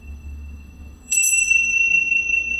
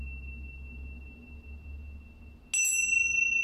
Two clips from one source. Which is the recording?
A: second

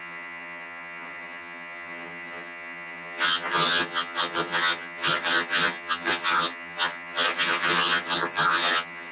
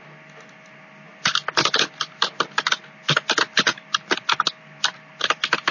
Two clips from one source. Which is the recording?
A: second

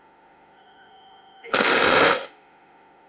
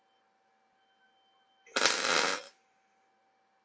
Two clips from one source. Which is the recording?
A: second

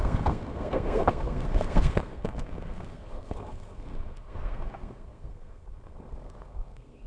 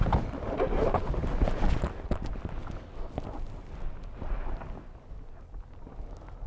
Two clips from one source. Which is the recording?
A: second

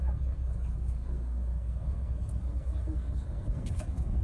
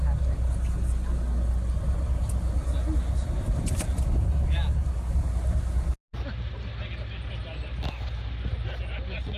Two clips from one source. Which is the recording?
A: second